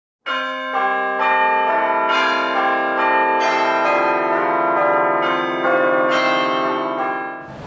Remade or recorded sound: recorded